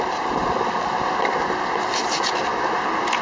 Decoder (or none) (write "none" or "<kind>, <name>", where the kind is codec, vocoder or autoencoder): none